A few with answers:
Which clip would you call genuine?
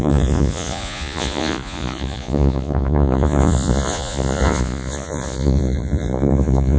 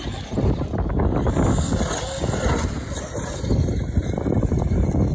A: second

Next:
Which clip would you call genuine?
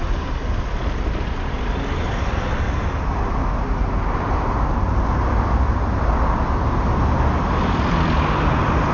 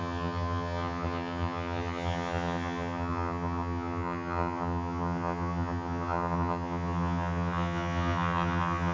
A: first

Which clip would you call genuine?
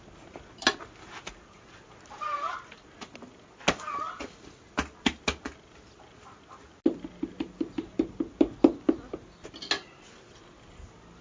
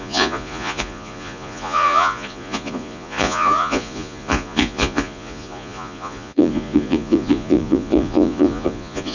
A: first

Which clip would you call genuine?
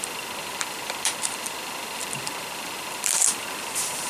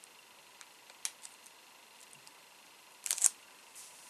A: second